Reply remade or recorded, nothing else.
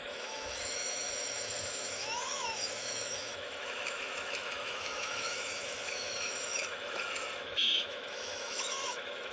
remade